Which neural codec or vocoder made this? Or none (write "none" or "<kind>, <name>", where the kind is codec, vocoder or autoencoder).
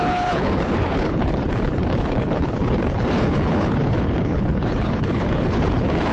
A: codec, HILCodec